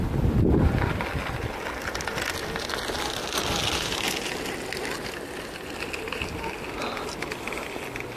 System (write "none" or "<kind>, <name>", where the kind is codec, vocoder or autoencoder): none